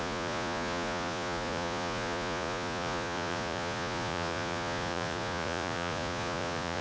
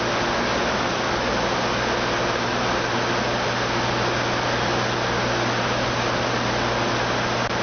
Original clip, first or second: second